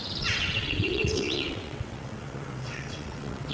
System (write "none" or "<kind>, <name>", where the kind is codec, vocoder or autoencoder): vocoder, WaveNeXt